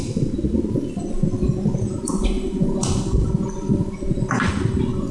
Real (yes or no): yes